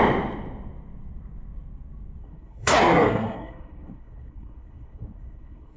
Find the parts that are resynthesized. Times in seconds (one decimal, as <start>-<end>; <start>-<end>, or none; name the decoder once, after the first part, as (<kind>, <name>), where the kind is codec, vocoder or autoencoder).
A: 2.2-5.8 (codec, SNAC)